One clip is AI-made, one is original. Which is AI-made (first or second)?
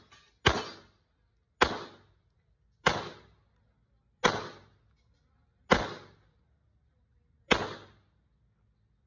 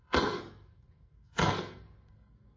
second